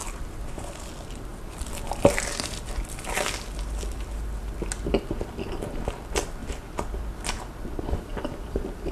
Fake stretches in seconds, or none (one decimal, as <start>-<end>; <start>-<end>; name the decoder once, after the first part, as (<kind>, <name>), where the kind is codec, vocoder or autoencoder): 0.0-0.8 (vocoder, BigVGAN v2); 1.3-4.9; 6.4-7.0; 8.1-8.9